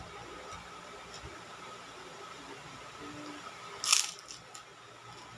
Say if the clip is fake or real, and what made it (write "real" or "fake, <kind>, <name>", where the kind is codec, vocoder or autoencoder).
real